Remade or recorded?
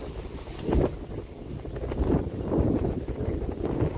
recorded